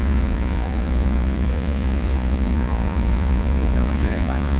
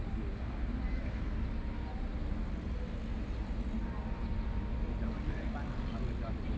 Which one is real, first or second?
second